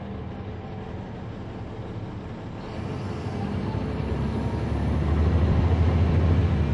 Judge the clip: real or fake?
real